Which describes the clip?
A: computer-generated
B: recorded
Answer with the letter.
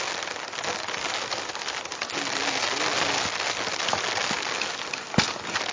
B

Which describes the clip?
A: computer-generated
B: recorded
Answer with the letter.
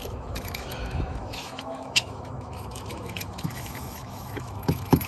A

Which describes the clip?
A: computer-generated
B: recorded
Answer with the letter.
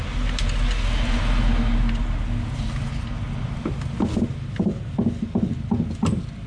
B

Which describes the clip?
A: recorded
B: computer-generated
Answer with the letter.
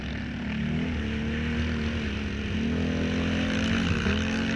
A